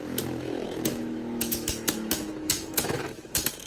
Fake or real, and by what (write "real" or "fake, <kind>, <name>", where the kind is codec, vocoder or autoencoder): fake, autoencoder, DAC-VAE